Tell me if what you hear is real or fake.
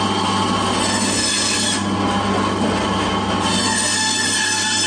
real